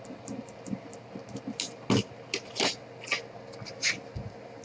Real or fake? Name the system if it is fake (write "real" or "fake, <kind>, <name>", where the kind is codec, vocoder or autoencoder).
real